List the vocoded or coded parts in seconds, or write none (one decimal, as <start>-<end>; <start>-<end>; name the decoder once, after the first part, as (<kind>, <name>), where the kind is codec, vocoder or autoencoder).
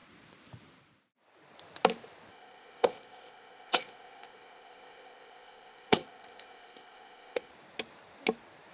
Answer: 2.3-7.5 (codec, ZipCodec)